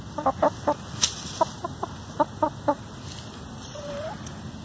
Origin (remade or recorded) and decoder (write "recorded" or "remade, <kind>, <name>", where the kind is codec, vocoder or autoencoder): recorded